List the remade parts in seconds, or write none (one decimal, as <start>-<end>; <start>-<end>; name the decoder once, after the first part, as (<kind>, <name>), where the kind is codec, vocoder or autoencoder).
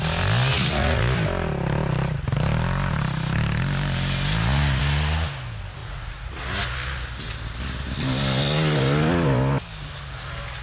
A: 0.5-1.0 (vocoder, Vocos); 5.8-6.4